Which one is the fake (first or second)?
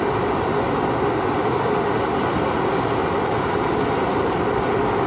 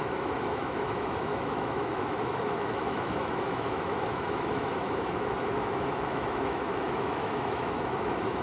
second